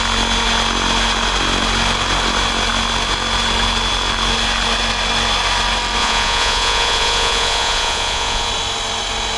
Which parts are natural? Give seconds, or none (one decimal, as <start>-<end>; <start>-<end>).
0.0-6.0; 8.5-9.4